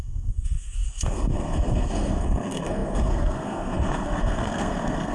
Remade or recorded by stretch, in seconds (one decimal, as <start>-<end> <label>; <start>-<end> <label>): 0.0-5.1 remade